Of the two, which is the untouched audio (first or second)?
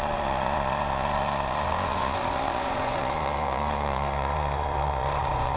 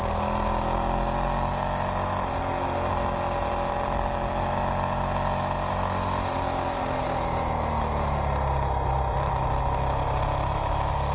second